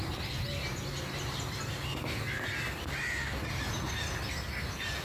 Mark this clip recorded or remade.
recorded